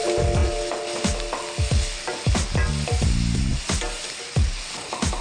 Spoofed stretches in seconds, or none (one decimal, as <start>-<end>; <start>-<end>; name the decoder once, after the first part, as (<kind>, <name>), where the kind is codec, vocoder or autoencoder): none